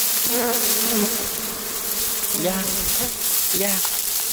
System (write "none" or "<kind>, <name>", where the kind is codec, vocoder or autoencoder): none